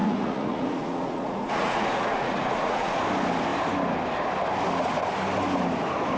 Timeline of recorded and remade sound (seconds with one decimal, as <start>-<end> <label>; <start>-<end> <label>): 0.0-3.0 remade; 3.0-6.2 recorded